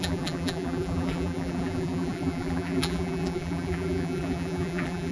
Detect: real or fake fake